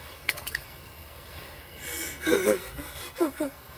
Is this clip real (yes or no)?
no